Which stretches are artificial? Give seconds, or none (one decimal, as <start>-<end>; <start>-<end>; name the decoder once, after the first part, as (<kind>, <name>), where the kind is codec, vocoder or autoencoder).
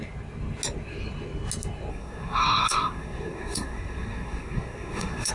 1.9-5.3 (codec, SNAC)